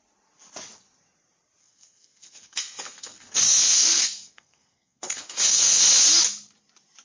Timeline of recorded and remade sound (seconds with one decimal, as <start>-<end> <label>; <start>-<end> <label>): 0.0-1.6 recorded; 1.6-5.8 remade; 5.8-7.0 recorded